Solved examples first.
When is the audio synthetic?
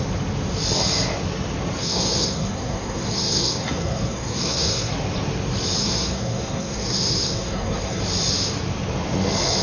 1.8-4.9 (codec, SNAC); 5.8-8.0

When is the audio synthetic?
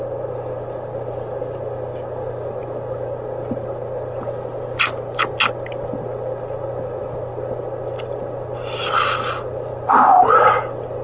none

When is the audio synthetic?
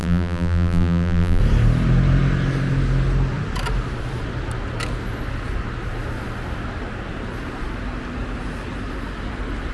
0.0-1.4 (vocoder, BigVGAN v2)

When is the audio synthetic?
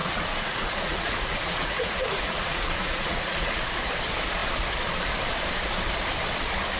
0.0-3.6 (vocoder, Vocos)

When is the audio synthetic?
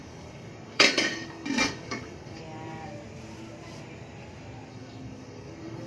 0.0-2.4 (codec, DAC); 4.7-5.9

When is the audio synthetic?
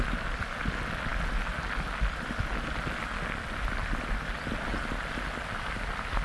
none